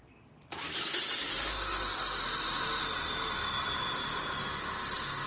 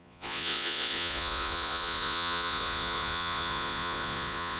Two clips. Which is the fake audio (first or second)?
second